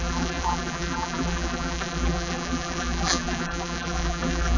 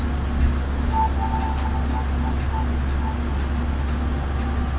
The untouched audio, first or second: second